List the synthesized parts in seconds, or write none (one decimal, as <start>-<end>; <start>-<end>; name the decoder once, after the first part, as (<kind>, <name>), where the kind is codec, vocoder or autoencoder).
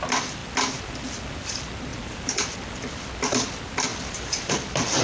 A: 0.0-5.0 (vocoder, BigVGAN v2)